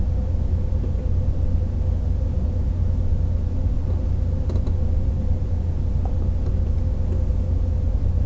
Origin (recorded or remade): recorded